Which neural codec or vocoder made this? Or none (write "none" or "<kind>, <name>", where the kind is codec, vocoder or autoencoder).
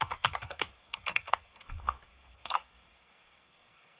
codec, SNAC